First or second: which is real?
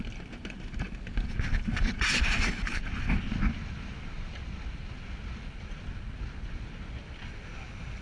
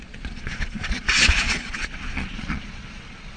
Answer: first